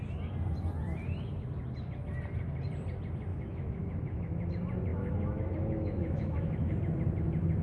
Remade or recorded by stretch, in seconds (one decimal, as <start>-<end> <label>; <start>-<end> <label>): 0.0-3.3 recorded; 3.3-4.5 remade; 4.5-4.9 recorded; 4.9-6.8 remade; 6.8-7.6 recorded